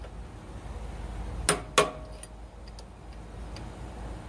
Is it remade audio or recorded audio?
recorded